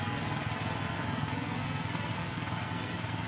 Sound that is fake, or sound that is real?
fake